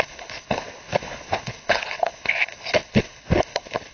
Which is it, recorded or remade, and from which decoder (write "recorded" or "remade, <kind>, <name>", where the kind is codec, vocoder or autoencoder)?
remade, codec, HILCodec